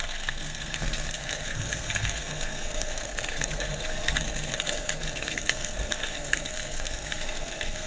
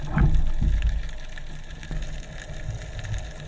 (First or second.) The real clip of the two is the second